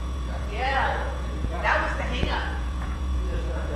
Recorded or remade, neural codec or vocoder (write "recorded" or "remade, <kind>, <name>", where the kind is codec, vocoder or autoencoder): remade, vocoder, Vocos